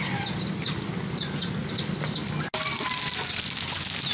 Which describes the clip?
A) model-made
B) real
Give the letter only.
B